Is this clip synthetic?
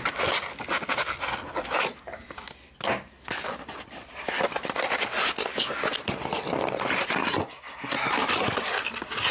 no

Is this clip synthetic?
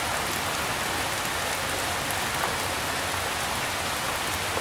no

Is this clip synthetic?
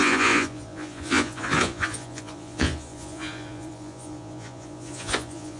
yes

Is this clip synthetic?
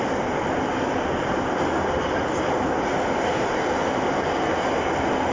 no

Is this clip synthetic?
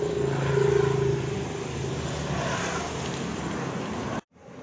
no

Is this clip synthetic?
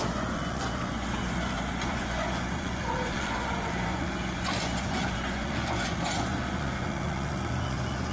yes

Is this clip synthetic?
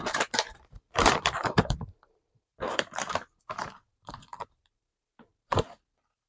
yes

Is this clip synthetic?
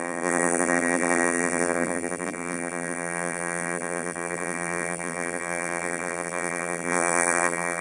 yes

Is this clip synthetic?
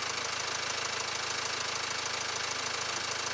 no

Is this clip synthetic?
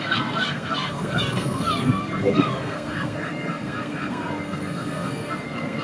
yes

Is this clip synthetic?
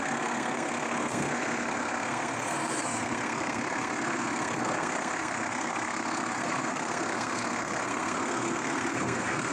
yes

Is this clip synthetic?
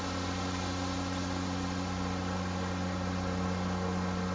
no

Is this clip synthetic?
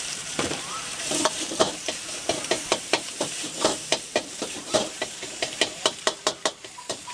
yes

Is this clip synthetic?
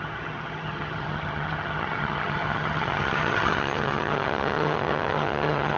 yes